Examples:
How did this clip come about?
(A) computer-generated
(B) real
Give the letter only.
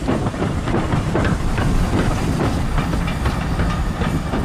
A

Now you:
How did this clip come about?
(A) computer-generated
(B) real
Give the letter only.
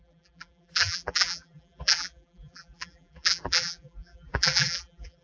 A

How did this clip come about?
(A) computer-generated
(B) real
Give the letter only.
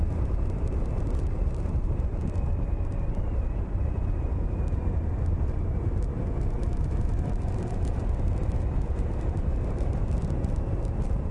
A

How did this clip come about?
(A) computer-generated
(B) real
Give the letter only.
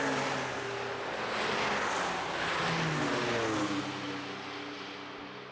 B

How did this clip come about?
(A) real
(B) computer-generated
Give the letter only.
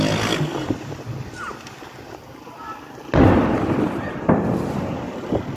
A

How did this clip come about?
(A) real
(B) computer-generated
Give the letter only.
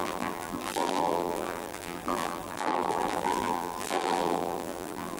B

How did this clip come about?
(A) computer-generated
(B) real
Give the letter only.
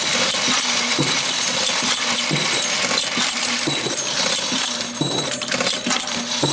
A